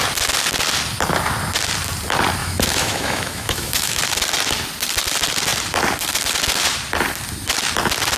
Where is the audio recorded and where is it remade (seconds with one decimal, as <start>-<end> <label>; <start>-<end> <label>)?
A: 0.0-2.4 recorded; 2.4-4.0 remade; 4.0-8.2 recorded